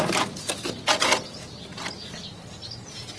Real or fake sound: real